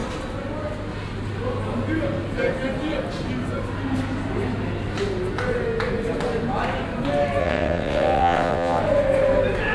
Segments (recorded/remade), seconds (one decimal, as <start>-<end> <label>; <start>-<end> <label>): 0.0-7.4 recorded; 7.4-8.8 remade; 8.8-9.7 recorded

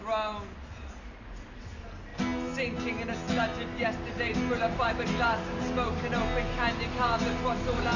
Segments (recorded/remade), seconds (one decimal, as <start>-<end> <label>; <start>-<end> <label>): 0.0-8.0 recorded

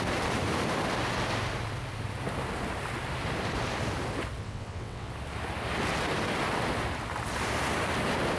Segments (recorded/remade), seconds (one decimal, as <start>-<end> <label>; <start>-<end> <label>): 0.0-4.4 recorded; 4.4-5.1 remade; 5.1-8.4 recorded

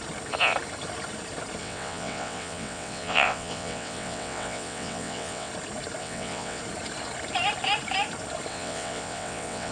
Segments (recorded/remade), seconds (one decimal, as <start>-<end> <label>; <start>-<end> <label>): 0.0-1.6 recorded; 1.6-5.5 remade; 5.5-6.0 recorded; 6.0-6.6 remade; 6.6-8.5 recorded; 8.5-9.7 remade

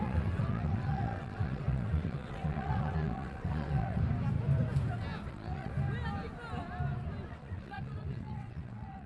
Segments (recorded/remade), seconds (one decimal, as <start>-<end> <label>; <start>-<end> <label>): 0.0-4.0 remade; 4.0-5.3 recorded; 5.3-5.7 remade; 5.7-7.3 recorded; 7.3-9.1 remade